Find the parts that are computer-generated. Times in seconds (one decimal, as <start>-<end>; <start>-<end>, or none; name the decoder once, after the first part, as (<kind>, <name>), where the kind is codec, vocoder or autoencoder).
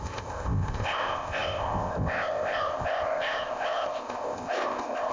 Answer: 0.0-5.1 (codec, ZipCodec)